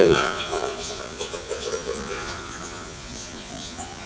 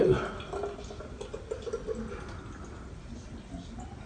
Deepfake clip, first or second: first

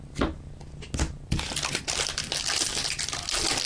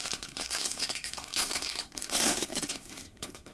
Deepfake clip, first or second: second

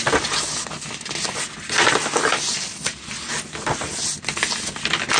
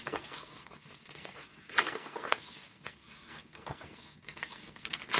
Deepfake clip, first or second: second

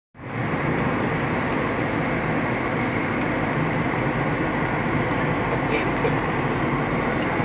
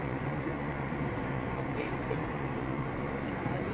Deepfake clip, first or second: second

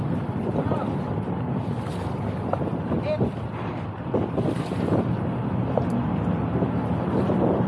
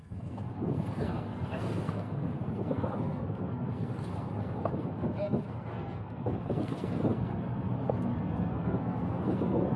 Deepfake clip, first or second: second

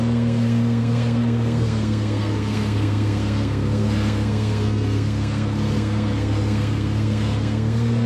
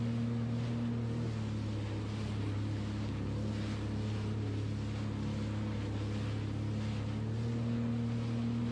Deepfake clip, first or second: first